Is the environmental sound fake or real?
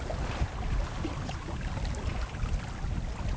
real